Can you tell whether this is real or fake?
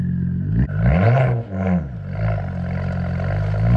real